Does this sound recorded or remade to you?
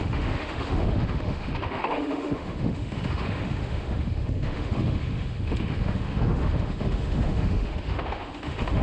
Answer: remade